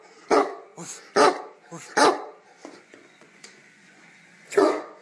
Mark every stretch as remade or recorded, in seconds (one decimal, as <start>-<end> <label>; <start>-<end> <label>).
0.0-2.6 recorded; 2.6-5.0 remade